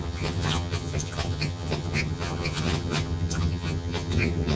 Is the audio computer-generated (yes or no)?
yes